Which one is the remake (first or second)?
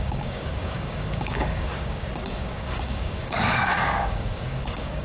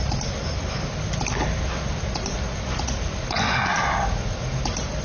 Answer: first